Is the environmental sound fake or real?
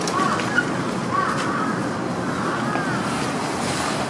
real